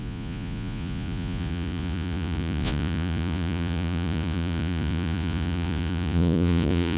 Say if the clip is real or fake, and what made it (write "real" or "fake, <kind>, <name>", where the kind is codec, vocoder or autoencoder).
fake, vocoder, Vocos